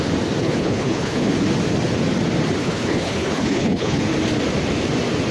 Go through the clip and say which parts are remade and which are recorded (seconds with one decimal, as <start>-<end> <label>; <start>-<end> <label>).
0.0-0.4 recorded; 0.4-1.3 remade; 1.3-2.6 recorded; 2.6-4.0 remade; 4.0-5.3 recorded